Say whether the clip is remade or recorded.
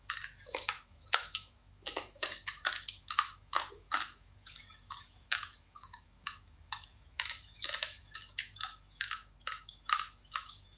remade